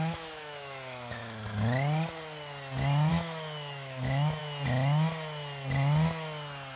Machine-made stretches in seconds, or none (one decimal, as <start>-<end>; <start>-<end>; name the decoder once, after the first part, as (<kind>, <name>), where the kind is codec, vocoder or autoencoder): 0.0-1.2 (autoencoder, DAC-VAE); 3.1-4.4